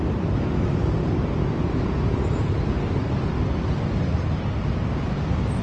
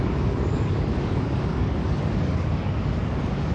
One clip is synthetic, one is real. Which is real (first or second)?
first